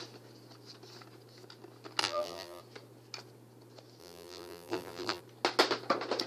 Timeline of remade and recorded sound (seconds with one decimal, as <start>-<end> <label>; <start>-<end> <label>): 0.0-2.0 recorded; 2.0-2.6 remade; 2.6-4.0 recorded; 4.0-5.2 remade; 5.2-6.3 recorded